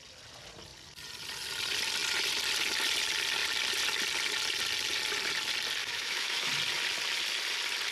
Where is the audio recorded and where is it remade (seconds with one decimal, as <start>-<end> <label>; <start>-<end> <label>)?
0.0-5.8 recorded; 5.8-6.5 remade; 6.5-7.9 recorded